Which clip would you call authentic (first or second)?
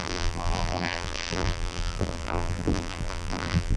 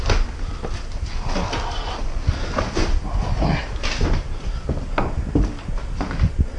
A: second